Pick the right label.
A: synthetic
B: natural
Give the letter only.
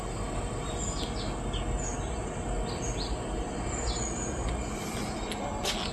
B